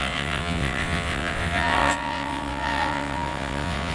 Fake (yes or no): yes